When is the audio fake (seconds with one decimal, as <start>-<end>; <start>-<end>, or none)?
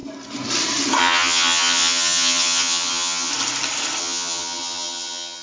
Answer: 1.0-3.3; 4.0-5.4